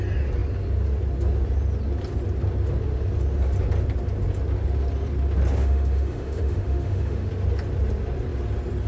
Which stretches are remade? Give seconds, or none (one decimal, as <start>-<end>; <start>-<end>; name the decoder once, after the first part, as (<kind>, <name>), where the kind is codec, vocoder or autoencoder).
5.6-7.3 (autoencoder, DAC-VAE)